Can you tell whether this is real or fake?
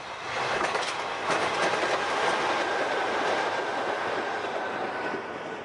real